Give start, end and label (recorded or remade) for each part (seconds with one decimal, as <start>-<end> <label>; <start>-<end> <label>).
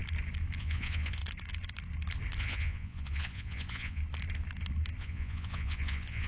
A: 0.0-0.6 recorded; 0.6-1.2 remade; 1.2-2.4 recorded; 2.4-4.0 remade; 4.0-5.0 recorded; 5.0-6.3 remade